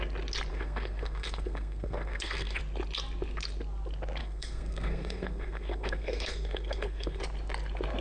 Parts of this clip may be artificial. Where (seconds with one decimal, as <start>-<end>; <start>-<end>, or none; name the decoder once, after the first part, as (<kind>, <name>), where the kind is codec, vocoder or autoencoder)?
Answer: 0.5-2.6 (codec, SNAC); 4.2-7.2